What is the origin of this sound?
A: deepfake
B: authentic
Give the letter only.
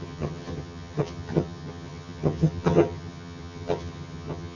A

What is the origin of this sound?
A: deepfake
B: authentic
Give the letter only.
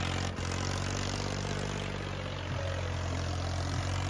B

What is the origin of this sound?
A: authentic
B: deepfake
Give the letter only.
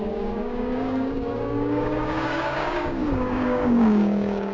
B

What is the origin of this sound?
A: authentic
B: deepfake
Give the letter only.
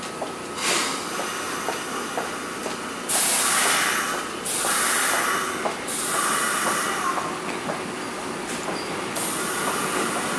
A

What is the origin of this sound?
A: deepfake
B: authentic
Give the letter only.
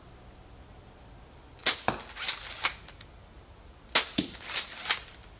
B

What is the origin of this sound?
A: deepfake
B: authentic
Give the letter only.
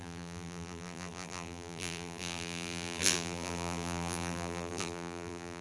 A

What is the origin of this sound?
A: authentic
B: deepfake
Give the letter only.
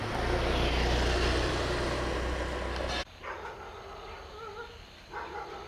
A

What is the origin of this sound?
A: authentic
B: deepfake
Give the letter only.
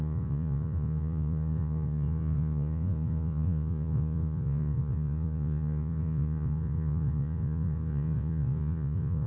B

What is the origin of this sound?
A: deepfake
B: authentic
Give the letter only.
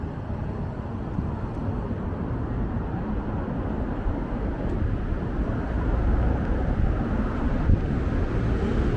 B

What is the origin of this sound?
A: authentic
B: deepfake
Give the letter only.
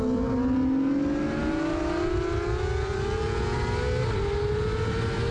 A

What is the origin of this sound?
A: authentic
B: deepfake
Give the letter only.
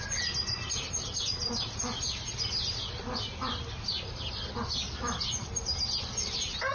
A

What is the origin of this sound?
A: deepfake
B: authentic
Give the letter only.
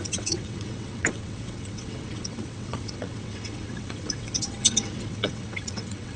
A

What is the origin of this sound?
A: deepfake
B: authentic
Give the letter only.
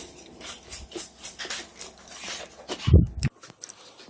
B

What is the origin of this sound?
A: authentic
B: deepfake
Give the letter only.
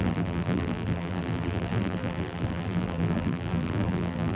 B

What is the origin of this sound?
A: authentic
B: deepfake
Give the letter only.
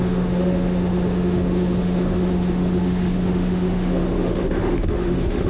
B